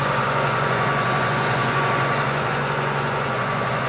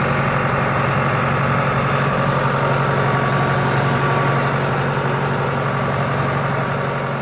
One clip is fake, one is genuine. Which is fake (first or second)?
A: first